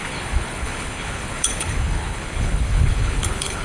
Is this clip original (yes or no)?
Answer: no